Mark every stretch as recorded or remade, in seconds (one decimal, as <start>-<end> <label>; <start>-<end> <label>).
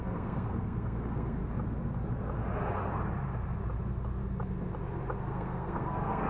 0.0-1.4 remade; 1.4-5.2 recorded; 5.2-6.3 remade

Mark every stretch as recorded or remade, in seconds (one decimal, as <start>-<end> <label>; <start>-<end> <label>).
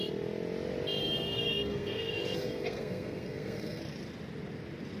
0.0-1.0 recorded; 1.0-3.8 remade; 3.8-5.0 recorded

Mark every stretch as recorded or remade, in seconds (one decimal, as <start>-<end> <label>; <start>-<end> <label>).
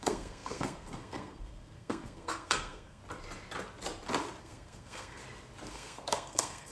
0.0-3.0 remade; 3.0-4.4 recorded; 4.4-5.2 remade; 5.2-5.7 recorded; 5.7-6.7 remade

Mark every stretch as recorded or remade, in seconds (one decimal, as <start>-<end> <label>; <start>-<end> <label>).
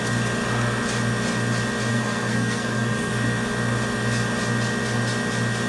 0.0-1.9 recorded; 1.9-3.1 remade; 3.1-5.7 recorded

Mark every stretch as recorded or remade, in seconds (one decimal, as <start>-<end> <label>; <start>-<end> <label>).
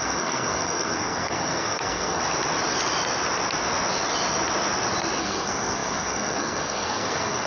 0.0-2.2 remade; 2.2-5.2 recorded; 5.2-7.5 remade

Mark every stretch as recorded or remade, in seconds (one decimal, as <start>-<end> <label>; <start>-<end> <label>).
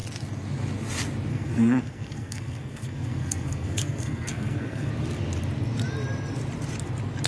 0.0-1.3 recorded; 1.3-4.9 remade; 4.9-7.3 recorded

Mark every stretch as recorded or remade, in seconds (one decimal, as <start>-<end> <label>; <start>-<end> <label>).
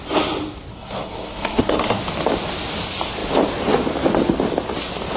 0.0-0.7 recorded; 0.7-2.0 remade; 2.0-5.2 recorded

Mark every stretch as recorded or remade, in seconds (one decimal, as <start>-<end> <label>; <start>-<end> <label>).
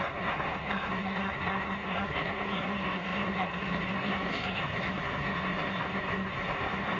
0.0-7.0 remade